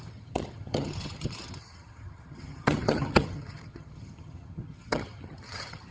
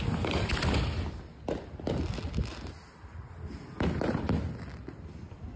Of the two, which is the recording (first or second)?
second